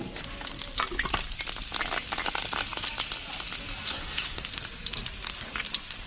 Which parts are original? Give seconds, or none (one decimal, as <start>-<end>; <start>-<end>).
0.0-3.9; 4.4-6.1